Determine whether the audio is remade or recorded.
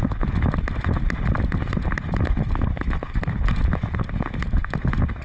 recorded